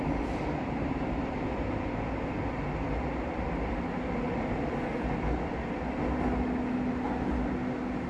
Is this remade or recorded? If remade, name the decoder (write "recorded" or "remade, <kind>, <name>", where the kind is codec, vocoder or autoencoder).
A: recorded